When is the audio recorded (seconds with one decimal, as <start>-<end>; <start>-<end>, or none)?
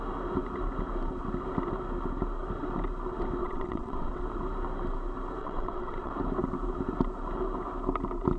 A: 0.0-3.4; 4.2-5.4; 6.1-8.4